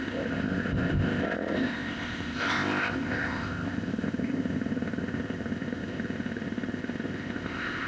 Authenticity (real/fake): fake